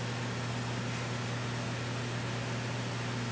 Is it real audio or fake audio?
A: real